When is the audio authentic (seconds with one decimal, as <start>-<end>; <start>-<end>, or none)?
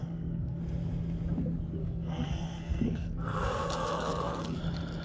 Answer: 0.6-1.8; 4.6-5.0